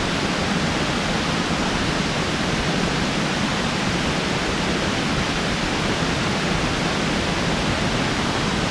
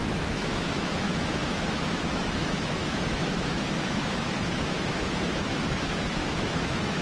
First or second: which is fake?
second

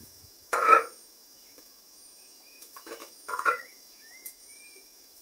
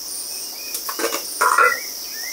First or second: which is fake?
first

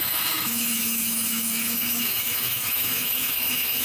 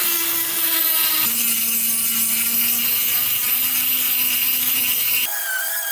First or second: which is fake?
first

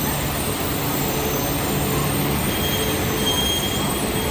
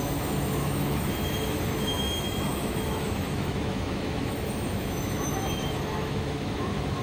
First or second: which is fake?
second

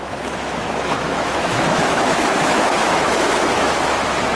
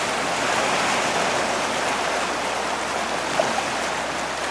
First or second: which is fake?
first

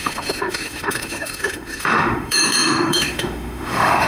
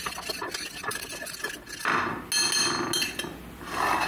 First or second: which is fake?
first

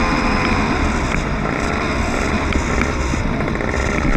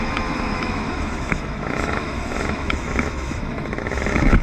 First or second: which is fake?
second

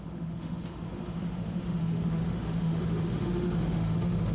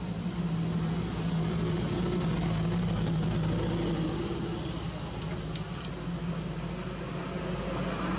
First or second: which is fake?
first